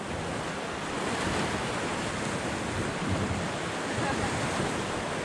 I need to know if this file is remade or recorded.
recorded